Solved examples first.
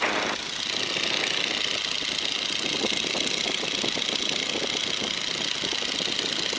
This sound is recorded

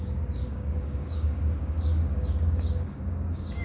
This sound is remade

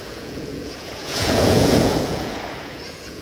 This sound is remade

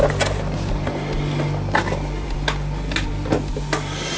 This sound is recorded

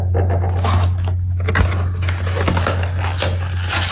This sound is recorded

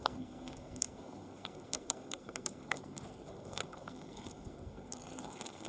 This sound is remade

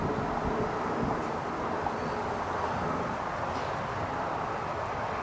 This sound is recorded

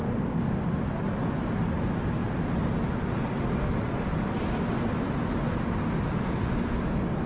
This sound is recorded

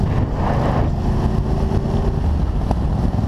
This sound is recorded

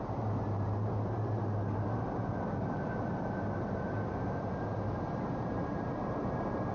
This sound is recorded